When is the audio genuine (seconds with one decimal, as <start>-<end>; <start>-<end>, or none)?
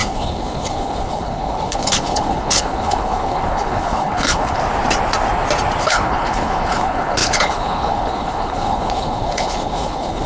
4.6-5.8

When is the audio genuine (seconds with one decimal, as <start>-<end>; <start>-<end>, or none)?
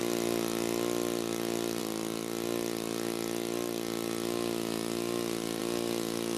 0.0-6.4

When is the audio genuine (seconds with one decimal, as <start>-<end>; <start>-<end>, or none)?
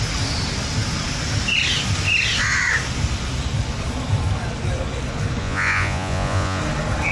0.0-5.4; 6.6-7.1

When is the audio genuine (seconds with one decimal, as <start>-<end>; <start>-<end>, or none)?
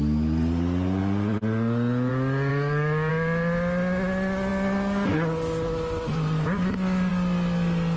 0.0-2.5; 3.1-8.0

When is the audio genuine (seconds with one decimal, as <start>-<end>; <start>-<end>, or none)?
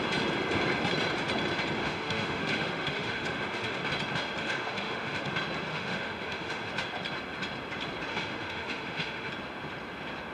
0.0-1.8; 3.8-4.4; 5.3-5.7; 6.7-8.1; 9.3-10.3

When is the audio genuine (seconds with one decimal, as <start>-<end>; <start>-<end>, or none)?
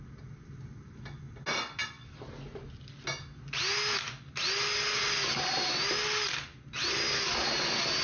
0.0-8.0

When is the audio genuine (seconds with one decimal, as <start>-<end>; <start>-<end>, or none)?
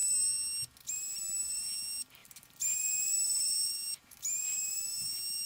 0.0-1.4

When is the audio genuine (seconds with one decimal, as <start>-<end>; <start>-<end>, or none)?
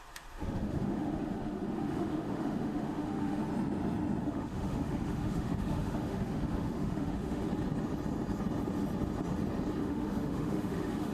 3.5-4.2; 7.5-9.8